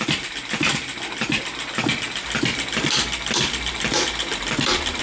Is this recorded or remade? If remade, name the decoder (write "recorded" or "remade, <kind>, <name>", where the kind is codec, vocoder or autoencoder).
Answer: recorded